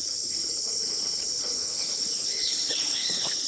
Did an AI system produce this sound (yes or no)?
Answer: yes